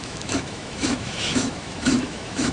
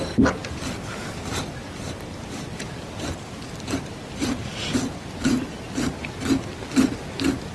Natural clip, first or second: second